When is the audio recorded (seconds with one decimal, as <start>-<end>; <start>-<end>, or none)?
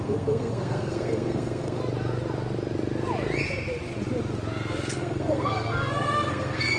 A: 1.8-5.0